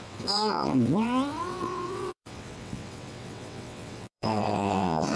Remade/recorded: remade